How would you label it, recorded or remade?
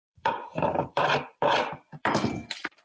remade